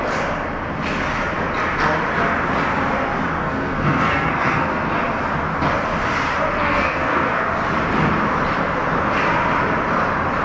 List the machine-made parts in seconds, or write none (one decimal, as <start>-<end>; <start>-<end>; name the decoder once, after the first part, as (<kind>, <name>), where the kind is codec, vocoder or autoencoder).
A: 3.4-4.9 (codec, SNAC); 6.6-7.5